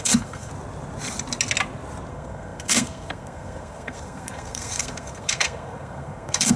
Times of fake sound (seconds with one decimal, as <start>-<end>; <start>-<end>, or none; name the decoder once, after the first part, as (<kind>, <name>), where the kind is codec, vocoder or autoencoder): 0.0-0.5 (codec, SNAC); 2.1-6.6